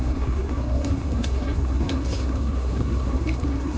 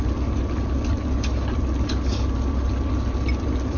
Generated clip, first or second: first